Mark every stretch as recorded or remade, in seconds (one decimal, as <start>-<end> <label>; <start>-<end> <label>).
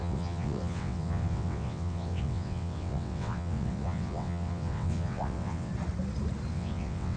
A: 0.0-5.7 remade; 5.7-6.5 recorded; 6.5-7.2 remade